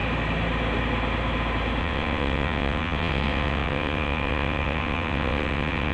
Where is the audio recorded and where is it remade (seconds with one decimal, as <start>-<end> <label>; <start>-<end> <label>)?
0.0-1.8 recorded; 1.8-5.9 remade